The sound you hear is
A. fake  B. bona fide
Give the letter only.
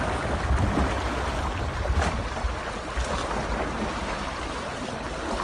B